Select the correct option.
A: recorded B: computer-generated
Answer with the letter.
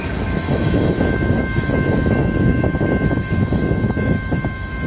B